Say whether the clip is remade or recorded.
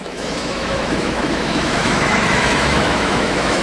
remade